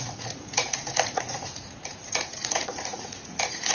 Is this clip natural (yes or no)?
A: no